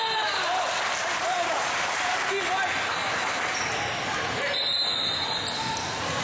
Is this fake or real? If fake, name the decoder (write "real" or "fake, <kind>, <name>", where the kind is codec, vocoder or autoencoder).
real